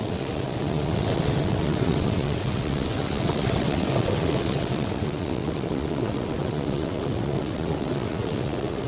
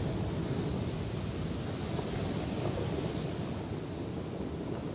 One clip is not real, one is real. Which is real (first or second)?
second